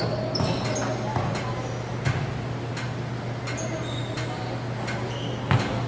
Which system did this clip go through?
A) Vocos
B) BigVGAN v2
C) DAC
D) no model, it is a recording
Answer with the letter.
D